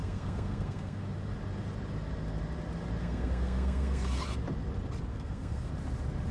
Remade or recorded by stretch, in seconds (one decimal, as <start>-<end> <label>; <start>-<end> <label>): 0.0-1.0 remade; 1.0-3.0 recorded; 3.0-4.2 remade; 4.2-5.1 recorded; 5.1-5.7 remade; 5.7-6.3 recorded